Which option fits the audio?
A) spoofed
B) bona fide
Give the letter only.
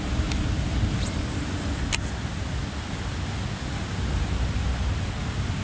B